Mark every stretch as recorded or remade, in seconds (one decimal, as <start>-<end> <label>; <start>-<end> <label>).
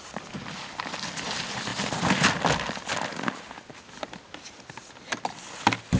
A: 0.0-1.7 remade; 1.7-5.2 recorded; 5.2-6.0 remade